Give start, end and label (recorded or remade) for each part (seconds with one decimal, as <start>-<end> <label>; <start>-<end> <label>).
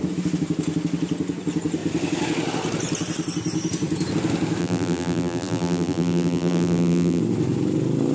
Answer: 0.0-4.6 recorded; 4.6-7.2 remade; 7.2-8.1 recorded